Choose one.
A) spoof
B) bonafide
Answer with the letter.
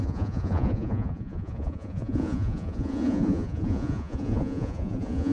A